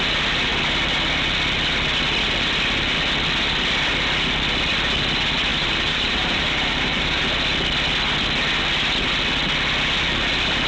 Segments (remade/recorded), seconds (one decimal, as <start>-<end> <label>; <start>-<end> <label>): 0.0-5.5 recorded; 5.5-7.2 remade; 7.2-10.7 recorded